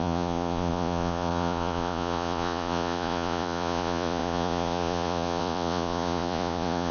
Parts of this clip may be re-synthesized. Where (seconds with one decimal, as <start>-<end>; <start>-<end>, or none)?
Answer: 0.0-6.9

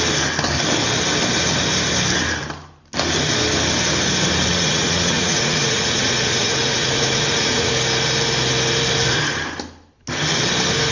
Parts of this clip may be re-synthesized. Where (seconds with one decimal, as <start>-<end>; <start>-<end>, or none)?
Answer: 4.5-7.7

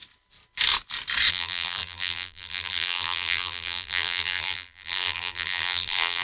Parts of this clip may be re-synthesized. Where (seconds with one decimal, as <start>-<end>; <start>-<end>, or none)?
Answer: 1.3-6.2

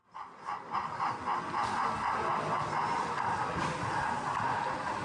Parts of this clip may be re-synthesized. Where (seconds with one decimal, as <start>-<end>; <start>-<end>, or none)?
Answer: none